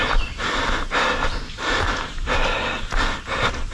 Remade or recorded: recorded